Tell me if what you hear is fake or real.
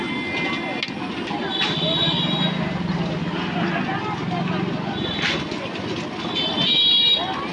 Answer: real